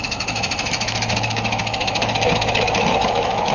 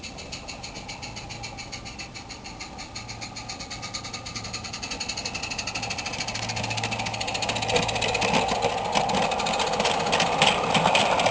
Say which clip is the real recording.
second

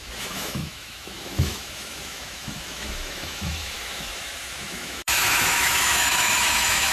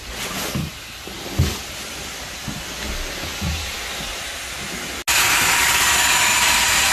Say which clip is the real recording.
second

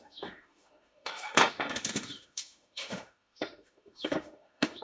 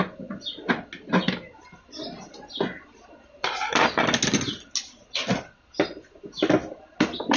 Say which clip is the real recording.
second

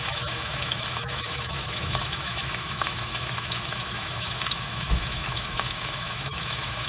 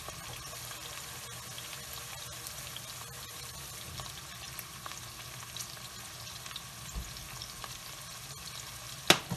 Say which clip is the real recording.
second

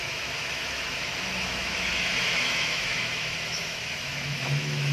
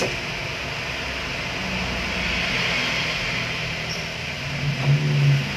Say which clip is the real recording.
second